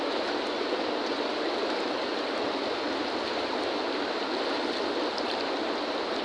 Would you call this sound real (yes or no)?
yes